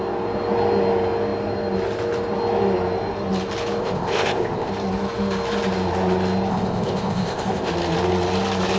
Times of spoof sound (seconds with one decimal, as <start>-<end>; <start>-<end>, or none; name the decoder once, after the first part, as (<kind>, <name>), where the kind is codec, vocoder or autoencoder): 3.8-4.7 (codec, ZipCodec); 6.5-7.7